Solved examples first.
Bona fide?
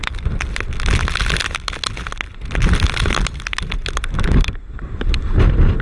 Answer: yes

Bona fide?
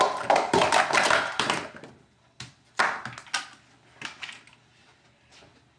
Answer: yes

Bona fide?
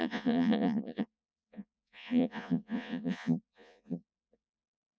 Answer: no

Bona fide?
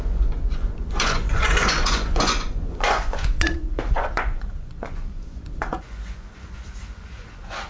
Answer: no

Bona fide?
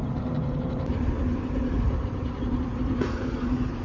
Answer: no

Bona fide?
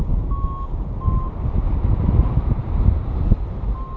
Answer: yes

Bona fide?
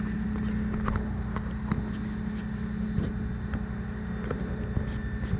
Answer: yes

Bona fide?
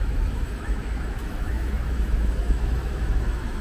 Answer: no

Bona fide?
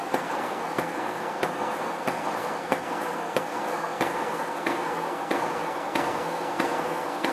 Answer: no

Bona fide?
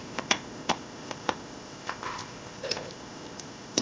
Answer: no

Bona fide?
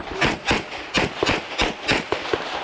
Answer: yes